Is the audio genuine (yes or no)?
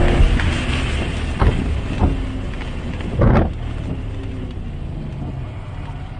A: yes